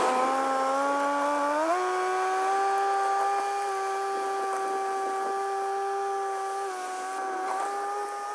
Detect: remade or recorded recorded